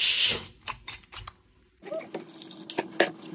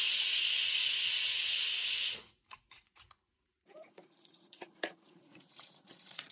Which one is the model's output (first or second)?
second